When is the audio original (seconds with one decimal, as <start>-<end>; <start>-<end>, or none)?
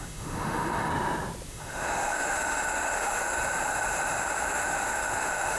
0.9-1.5; 3.4-4.2